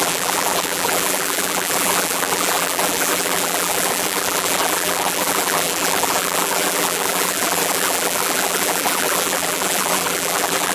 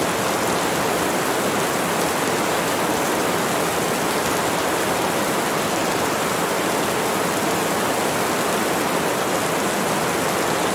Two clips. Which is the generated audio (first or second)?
first